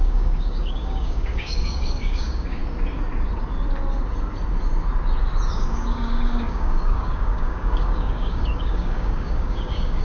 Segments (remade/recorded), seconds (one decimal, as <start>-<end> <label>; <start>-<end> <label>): 0.0-2.6 remade; 2.6-5.5 recorded; 5.5-10.0 remade